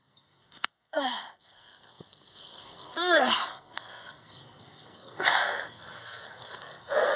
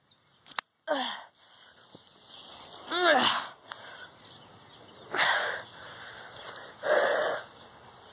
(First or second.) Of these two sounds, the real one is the second